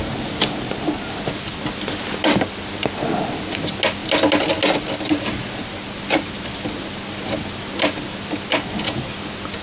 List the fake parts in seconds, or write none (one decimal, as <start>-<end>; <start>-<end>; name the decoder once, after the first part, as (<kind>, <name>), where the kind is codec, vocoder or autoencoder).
none